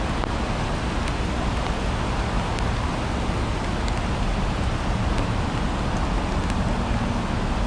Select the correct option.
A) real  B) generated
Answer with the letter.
A